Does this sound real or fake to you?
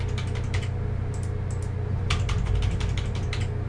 real